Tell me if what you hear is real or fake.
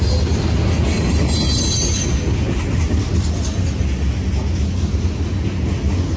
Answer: real